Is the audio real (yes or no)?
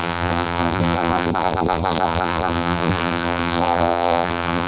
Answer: no